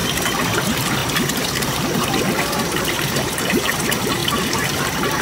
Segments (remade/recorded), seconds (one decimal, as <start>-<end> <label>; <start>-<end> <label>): 0.0-0.6 recorded; 0.6-5.2 remade